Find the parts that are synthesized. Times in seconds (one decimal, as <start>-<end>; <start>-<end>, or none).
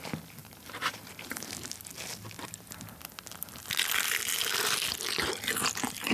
0.4-1.5